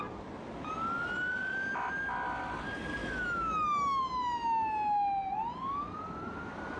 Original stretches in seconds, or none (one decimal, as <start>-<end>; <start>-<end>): 0.0-3.0; 4.0-6.8